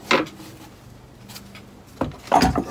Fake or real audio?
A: real